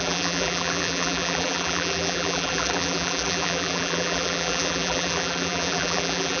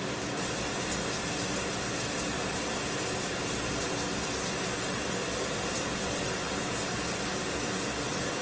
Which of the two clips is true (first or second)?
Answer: second